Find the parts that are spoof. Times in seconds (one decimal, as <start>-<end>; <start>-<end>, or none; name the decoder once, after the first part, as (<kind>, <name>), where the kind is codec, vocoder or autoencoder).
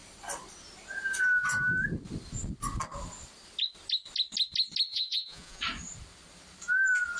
4.9-5.6 (vocoder, Vocos)